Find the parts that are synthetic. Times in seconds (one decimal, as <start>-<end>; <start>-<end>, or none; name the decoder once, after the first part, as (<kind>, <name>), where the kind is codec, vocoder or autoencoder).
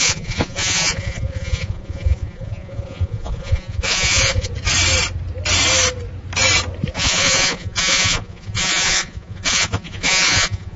0.0-4.5 (vocoder, Vocos); 6.9-10.8